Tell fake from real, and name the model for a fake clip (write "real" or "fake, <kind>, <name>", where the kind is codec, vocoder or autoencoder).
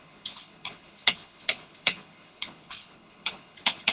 fake, codec, HILCodec